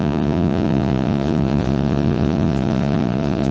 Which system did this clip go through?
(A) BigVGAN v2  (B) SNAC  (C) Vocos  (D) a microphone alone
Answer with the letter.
C